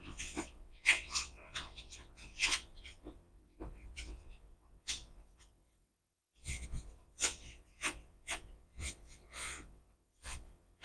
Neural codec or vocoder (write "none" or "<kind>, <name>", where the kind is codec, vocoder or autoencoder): vocoder, WaveNeXt